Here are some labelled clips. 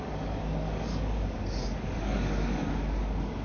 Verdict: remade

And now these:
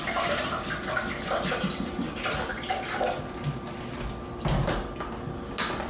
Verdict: recorded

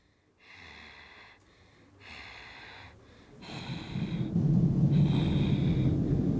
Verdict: recorded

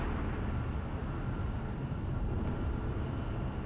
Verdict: recorded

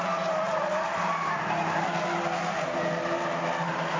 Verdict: recorded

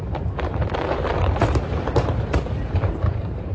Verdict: remade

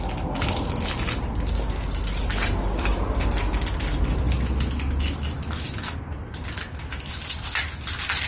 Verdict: recorded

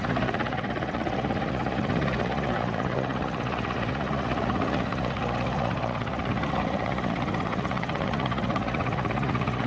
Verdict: remade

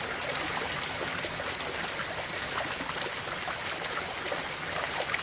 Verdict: recorded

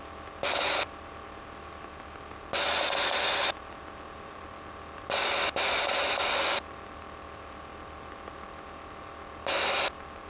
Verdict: recorded